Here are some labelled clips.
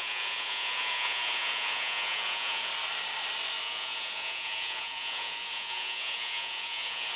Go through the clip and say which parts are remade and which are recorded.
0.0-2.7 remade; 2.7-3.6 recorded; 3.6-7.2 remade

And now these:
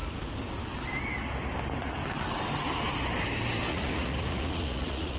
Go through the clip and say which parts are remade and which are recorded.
0.0-3.7 recorded; 3.7-5.2 remade